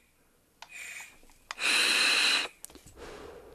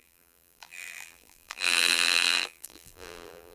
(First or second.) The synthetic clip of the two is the second